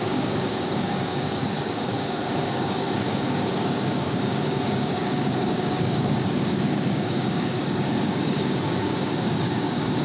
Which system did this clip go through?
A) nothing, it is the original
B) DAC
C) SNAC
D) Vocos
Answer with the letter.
B